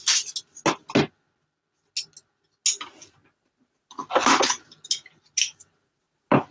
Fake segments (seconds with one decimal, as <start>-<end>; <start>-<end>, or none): none